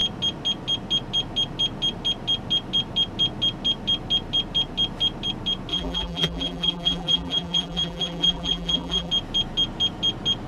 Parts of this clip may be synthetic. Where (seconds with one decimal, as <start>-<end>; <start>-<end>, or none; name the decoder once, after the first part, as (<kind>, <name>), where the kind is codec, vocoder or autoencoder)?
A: 5.7-9.1 (vocoder, BigVGAN v2)